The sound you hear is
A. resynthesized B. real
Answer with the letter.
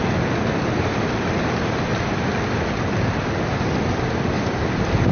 B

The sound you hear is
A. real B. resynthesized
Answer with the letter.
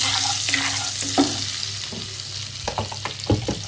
A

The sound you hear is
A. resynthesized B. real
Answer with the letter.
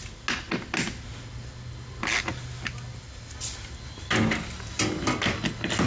B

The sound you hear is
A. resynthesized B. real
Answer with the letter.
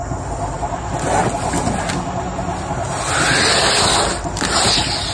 B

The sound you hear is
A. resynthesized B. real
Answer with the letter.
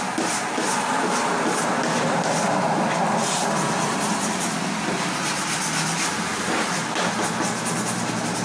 B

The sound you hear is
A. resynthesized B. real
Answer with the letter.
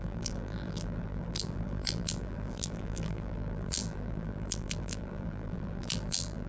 A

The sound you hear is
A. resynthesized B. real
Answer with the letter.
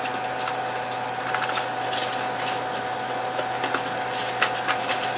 B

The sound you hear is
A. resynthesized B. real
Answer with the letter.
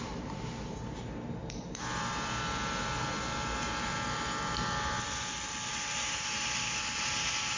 A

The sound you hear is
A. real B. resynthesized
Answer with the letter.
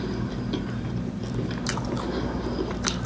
A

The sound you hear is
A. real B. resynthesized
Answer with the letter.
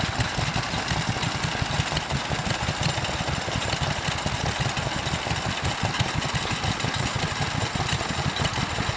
A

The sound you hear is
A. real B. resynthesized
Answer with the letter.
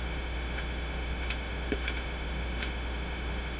B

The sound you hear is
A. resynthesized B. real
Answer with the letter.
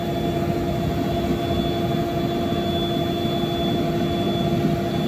B